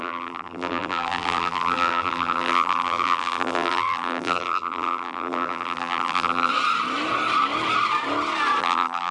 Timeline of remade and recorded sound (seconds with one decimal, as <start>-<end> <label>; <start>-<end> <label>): 0.0-6.5 remade; 6.5-8.6 recorded; 8.6-9.1 remade